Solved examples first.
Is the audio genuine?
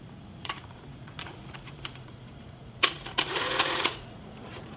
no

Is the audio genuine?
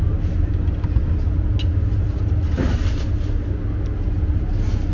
yes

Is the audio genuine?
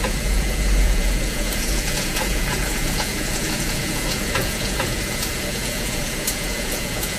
no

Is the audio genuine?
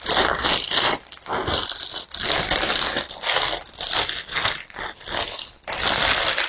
yes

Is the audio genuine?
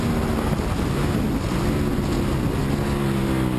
yes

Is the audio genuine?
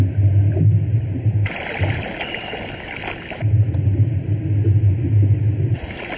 yes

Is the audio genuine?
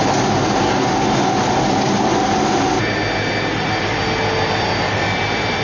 yes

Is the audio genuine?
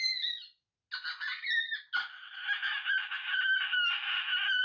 yes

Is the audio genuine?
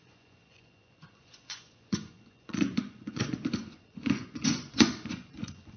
no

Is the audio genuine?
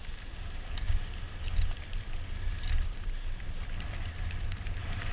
yes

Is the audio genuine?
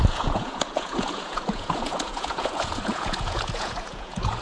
no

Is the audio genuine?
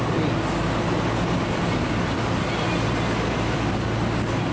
yes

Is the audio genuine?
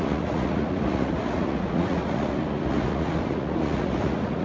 no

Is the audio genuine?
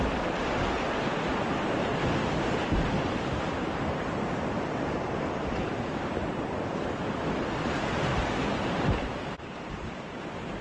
yes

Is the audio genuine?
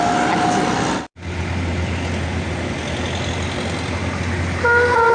yes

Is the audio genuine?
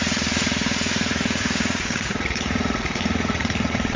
no